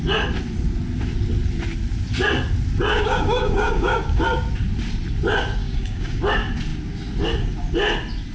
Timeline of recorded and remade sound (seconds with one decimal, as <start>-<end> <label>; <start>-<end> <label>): 0.0-2.9 recorded; 2.9-4.2 remade; 4.2-5.6 recorded; 5.6-6.2 remade; 6.2-8.3 recorded